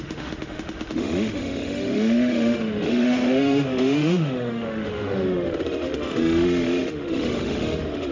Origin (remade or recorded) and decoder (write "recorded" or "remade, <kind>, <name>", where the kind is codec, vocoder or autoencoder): remade, autoencoder, DAC-VAE